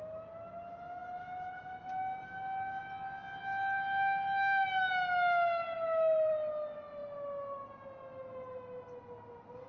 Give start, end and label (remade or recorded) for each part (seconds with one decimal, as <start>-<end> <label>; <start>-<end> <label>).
0.0-9.7 recorded